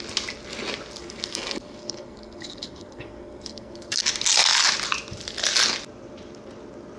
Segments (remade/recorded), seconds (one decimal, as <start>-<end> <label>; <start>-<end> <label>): 0.0-1.0 recorded; 1.0-4.0 remade; 4.0-7.0 recorded